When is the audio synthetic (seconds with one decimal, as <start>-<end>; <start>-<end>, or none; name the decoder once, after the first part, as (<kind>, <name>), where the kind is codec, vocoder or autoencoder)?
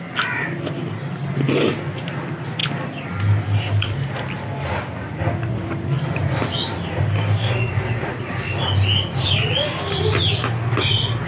none